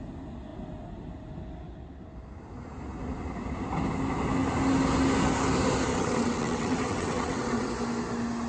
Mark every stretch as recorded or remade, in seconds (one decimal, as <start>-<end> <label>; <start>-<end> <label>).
0.0-5.9 recorded; 5.9-7.7 remade; 7.7-8.5 recorded

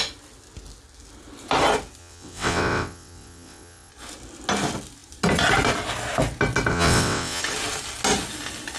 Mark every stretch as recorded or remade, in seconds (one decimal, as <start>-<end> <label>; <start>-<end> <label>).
0.0-2.0 recorded; 2.0-3.9 remade; 3.9-6.7 recorded; 6.7-7.4 remade; 7.4-8.8 recorded